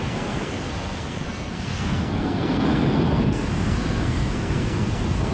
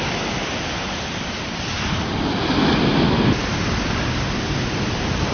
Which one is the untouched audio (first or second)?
second